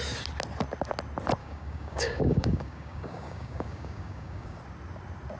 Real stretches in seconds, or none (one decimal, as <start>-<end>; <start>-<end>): 0.0-1.4; 4.6-5.4